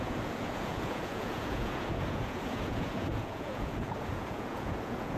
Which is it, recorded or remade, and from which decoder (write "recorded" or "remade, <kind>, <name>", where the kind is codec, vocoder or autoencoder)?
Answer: remade, vocoder, Vocos